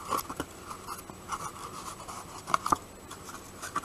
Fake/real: real